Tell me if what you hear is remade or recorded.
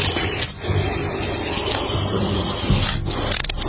recorded